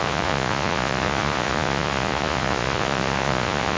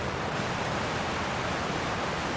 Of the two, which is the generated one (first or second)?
first